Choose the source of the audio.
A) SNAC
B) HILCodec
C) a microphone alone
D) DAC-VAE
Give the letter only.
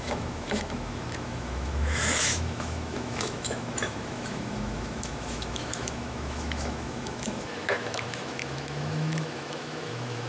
D